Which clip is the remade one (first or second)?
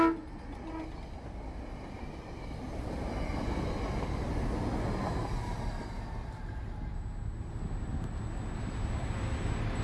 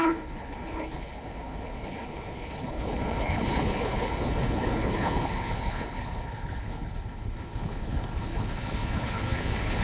second